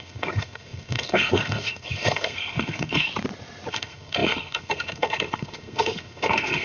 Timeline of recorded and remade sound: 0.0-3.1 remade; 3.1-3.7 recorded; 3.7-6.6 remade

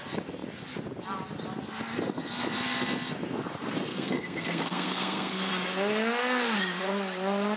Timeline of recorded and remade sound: 0.0-3.9 recorded; 3.9-5.5 remade; 5.5-7.6 recorded

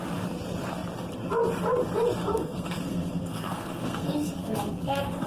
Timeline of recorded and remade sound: 0.0-2.2 recorded; 2.2-5.3 remade

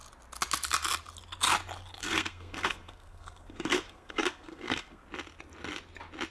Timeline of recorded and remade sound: 0.0-2.0 recorded; 2.0-5.0 remade; 5.0-6.3 recorded

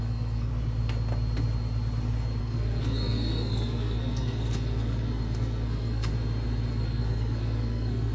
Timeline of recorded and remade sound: 0.0-0.5 remade; 0.5-2.4 recorded; 2.4-6.1 remade; 6.1-6.7 recorded; 6.7-8.1 remade

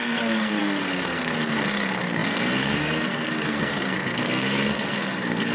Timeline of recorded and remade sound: 0.0-5.5 remade

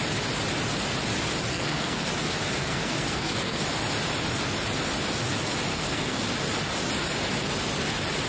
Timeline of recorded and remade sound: 0.0-1.5 recorded; 1.5-2.1 remade; 2.1-2.6 recorded; 2.6-3.6 remade; 3.6-5.7 recorded; 5.7-6.2 remade; 6.2-8.3 recorded

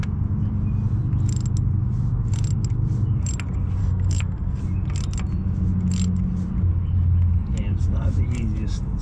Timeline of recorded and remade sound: 0.0-3.8 recorded; 3.8-4.6 remade; 4.6-9.0 recorded